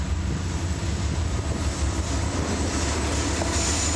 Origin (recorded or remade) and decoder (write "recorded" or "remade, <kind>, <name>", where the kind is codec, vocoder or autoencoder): recorded